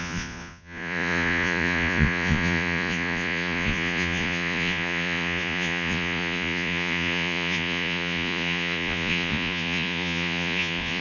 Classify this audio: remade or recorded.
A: remade